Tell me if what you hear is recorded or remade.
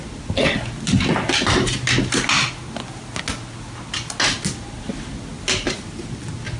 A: recorded